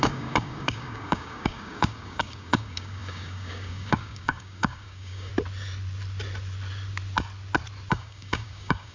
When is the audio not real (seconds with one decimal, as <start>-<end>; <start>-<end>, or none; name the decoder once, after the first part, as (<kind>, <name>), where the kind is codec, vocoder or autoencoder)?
0.0-5.3 (codec, DAC); 7.9-8.9